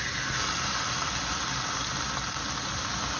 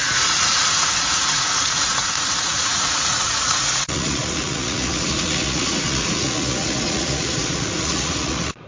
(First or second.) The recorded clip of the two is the first